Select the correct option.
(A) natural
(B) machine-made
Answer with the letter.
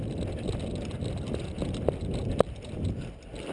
A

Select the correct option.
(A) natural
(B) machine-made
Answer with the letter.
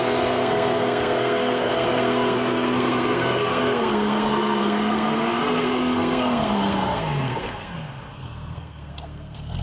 B